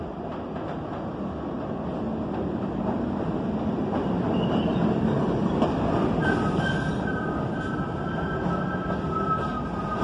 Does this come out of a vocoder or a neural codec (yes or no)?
no